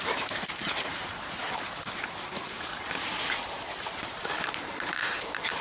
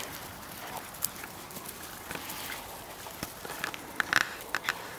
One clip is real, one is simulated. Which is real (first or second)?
second